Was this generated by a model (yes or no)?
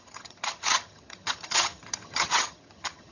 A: yes